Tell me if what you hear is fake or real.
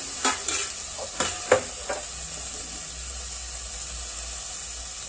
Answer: real